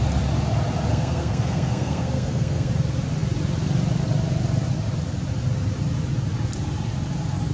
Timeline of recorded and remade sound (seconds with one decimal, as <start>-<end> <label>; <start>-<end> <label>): 0.0-0.9 recorded; 0.9-2.7 remade; 2.7-7.5 recorded